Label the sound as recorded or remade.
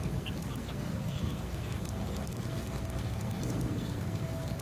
remade